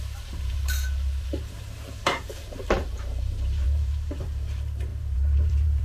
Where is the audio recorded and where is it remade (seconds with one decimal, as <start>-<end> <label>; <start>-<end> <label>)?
0.0-5.8 remade